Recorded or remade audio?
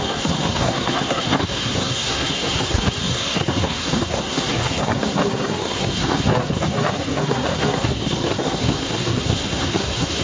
remade